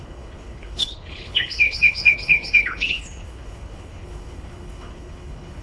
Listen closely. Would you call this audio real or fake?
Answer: fake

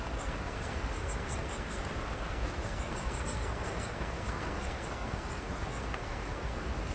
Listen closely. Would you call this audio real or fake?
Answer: fake